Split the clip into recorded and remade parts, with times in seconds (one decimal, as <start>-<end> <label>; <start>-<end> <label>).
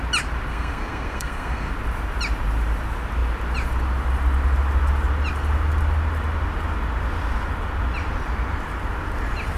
0.0-0.5 recorded; 0.5-1.7 remade; 1.7-9.6 recorded